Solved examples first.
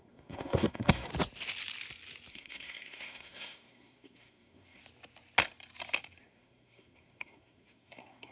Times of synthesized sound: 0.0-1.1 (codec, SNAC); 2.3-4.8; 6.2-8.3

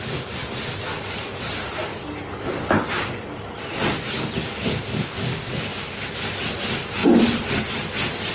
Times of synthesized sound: none

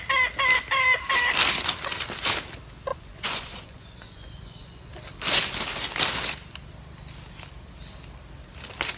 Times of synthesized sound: 2.9-4.9 (vocoder, Vocos)

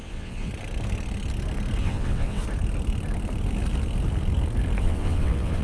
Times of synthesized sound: 0.0-0.5 (vocoder, WaveNeXt); 1.8-2.4; 4.8-5.6

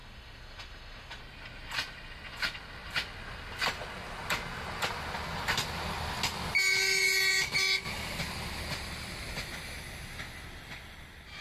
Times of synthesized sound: 0.0-1.2 (autoencoder, DAC-VAE)

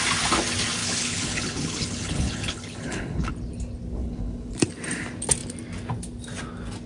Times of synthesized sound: 0.8-3.3 (codec, HILCodec); 4.0-4.5

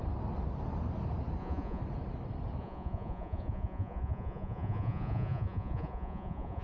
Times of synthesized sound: 1.4-1.8 (vocoder, Vocos); 2.6-6.6